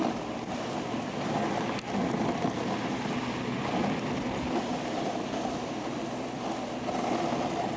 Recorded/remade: recorded